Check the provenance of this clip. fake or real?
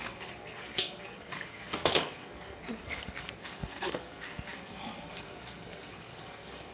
fake